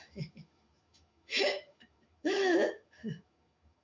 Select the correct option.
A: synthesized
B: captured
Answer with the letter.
A